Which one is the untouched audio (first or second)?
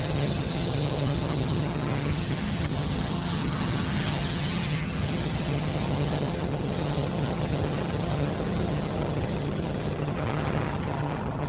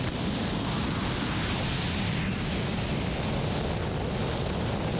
second